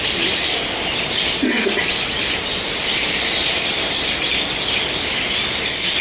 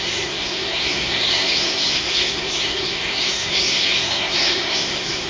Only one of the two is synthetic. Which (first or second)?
second